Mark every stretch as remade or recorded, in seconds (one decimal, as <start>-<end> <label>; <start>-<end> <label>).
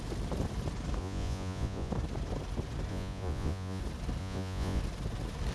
0.0-1.0 recorded; 1.0-1.9 remade; 1.9-2.9 recorded; 2.9-3.8 remade; 3.8-4.2 recorded; 4.2-4.8 remade; 4.8-5.5 recorded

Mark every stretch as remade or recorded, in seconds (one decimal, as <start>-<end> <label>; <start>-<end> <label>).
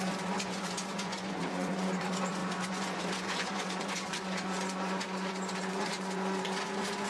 0.0-7.1 remade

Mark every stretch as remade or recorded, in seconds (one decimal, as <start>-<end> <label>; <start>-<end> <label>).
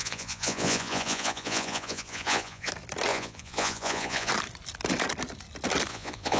0.0-2.7 remade; 2.7-3.1 recorded; 3.1-4.3 remade; 4.3-5.9 recorded; 5.9-6.4 remade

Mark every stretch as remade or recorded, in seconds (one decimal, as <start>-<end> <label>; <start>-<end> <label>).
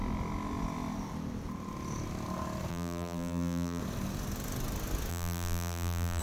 0.0-2.7 recorded; 2.7-3.8 remade; 3.8-5.1 recorded; 5.1-6.2 remade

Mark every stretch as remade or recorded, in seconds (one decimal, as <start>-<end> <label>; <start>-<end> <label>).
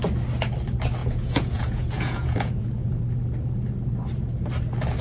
0.0-1.0 recorded; 1.0-3.0 remade; 3.0-5.0 recorded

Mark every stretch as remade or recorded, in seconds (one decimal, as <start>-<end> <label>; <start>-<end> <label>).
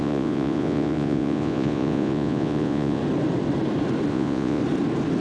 0.0-3.0 remade; 3.0-4.1 recorded; 4.1-4.6 remade; 4.6-5.2 recorded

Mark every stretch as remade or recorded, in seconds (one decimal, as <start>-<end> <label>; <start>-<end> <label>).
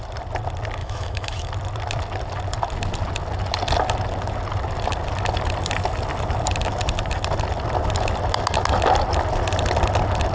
0.0-0.8 recorded; 0.8-1.5 remade; 1.5-10.3 recorded